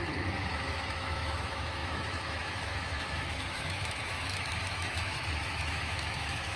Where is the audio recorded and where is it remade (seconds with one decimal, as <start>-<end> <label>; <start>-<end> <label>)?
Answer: 0.0-6.6 remade